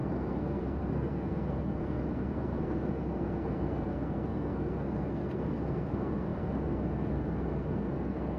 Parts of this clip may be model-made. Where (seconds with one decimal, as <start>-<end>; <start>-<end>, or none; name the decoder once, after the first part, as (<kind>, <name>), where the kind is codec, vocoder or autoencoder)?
0.0-8.4 (codec, SNAC)